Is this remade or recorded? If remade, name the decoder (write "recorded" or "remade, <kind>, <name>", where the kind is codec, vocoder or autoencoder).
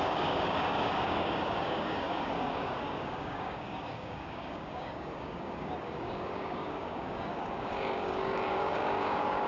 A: remade, codec, DAC